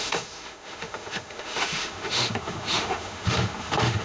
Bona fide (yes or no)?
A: no